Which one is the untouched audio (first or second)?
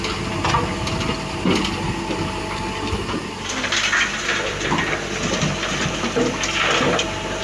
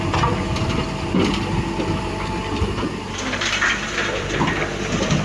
first